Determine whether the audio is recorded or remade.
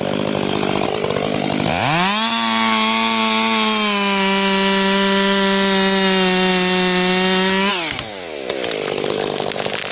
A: recorded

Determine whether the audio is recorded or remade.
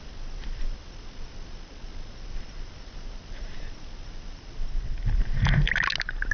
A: recorded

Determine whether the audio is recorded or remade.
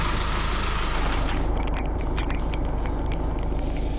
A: recorded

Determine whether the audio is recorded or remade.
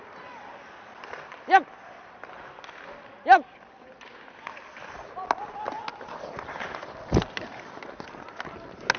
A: recorded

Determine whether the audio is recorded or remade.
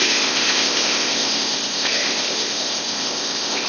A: remade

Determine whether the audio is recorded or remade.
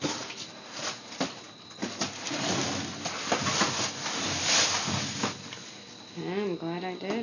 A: recorded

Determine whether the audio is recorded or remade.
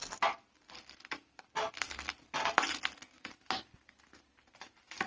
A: recorded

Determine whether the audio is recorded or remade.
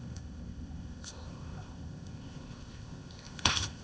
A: remade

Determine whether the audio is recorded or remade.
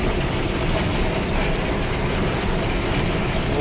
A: recorded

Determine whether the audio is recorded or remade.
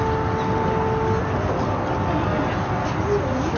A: recorded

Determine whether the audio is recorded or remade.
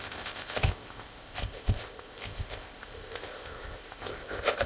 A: remade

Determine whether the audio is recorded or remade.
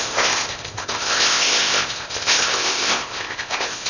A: remade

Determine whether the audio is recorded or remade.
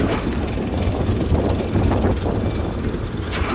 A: recorded